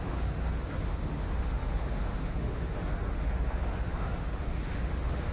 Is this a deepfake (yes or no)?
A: yes